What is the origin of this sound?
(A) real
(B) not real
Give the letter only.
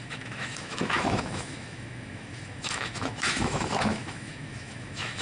B